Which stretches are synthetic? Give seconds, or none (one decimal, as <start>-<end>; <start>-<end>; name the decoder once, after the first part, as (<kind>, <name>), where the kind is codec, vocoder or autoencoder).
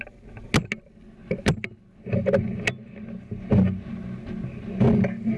none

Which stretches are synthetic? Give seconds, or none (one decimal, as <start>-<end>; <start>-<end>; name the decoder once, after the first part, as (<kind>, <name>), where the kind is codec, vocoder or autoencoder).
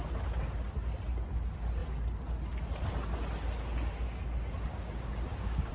4.7-5.7 (codec, DAC)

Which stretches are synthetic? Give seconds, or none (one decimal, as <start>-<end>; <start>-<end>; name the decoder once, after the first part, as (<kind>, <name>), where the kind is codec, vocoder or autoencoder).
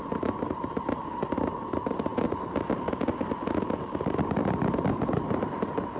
none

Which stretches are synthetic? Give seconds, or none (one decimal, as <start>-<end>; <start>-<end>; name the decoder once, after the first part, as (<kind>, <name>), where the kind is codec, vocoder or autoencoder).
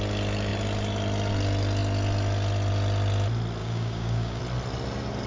3.6-4.4 (codec, DAC)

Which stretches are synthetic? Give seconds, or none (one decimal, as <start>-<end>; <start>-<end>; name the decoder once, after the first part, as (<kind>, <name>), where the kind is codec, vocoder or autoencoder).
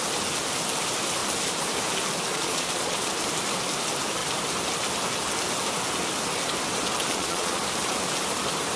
2.3-3.1 (vocoder, Vocos); 7.1-7.6